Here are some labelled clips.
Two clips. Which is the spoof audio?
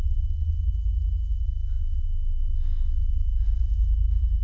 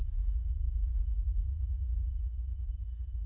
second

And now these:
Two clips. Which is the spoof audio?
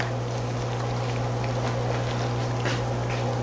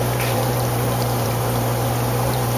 second